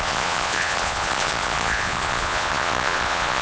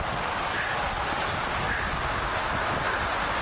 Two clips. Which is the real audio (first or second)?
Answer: second